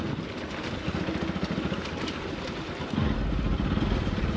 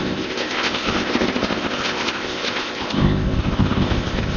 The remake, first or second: second